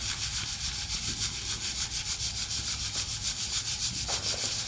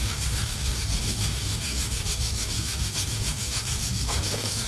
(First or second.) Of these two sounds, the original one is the first